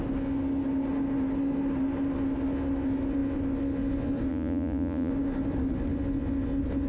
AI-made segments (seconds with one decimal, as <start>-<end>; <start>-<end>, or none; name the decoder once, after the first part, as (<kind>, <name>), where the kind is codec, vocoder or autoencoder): 4.3-5.1 (vocoder, Vocos)